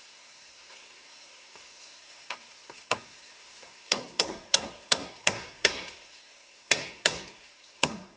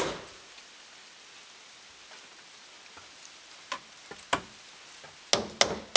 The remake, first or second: first